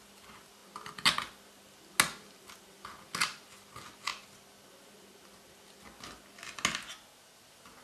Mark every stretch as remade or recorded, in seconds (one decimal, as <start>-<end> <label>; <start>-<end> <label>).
0.0-7.8 recorded